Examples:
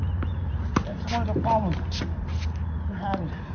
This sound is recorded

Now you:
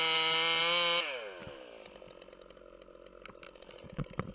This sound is recorded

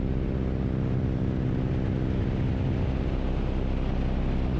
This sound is recorded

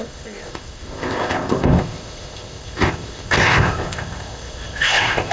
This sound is remade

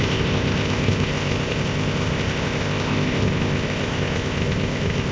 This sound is remade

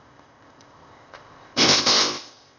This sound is remade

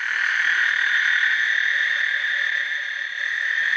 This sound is recorded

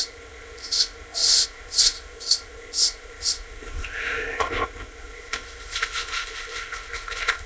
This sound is remade